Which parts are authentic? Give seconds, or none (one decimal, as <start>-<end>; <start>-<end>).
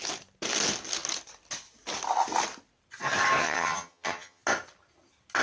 0.0-3.4; 4.4-5.4